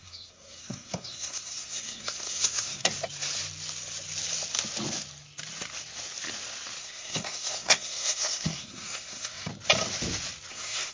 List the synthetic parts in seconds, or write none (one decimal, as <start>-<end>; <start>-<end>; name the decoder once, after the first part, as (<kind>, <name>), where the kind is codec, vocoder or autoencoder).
0.0-2.9 (codec, SNAC); 6.8-9.5; 10.5-10.9